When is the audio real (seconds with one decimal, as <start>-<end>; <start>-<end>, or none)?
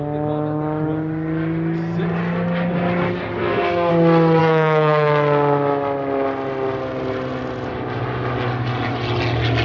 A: 0.0-3.4; 3.9-4.4; 5.1-9.6